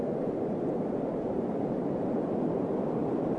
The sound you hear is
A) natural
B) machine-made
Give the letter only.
A